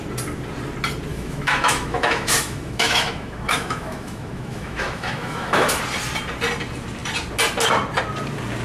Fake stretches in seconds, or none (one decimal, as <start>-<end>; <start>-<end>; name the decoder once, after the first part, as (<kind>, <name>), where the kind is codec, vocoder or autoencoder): 1.1-5.8 (autoencoder, DAC-VAE)